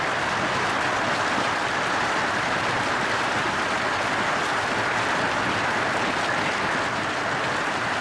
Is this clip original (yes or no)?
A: yes